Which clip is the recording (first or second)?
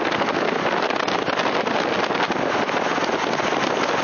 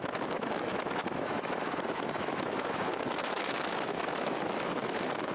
first